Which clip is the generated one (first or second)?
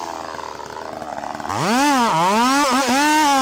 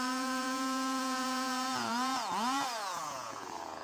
second